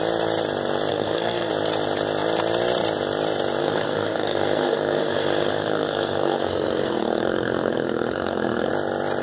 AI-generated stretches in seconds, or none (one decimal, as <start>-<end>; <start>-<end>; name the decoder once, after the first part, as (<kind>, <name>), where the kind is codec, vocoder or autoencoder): 0.9-1.5 (codec, SNAC); 3.6-8.7